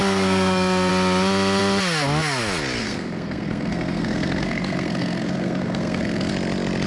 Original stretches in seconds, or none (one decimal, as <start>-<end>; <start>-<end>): 0.9-2.8; 6.3-6.9